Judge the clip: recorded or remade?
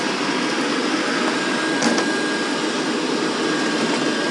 recorded